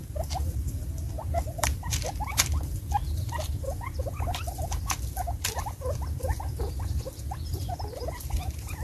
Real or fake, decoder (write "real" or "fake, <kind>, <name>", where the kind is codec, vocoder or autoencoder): fake, vocoder, BigVGAN v2